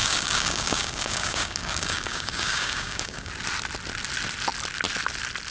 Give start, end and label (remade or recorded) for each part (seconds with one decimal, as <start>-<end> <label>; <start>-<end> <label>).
0.0-3.3 remade; 3.3-5.5 recorded